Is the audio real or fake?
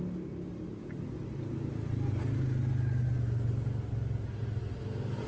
real